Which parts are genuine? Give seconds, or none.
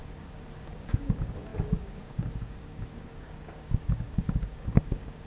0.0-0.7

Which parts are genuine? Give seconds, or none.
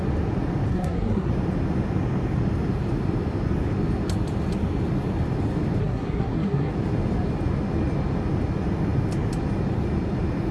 0.0-0.7; 1.3-5.8; 6.7-10.5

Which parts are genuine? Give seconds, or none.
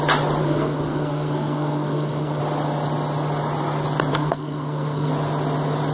0.0-0.4; 2.4-4.1; 5.1-5.9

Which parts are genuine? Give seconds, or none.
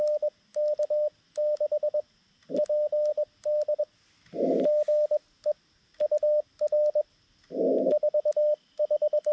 0.0-9.3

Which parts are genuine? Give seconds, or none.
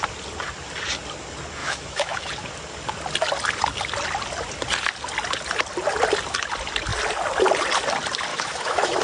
0.0-1.6; 2.3-8.3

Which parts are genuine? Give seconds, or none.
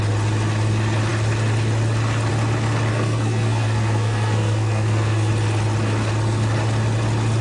0.0-2.9; 5.3-7.4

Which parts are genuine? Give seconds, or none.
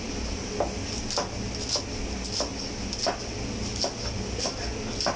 0.0-5.2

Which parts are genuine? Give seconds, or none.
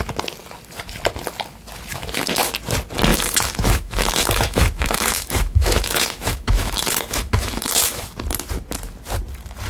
0.0-1.9; 2.5-3.1; 8.1-9.7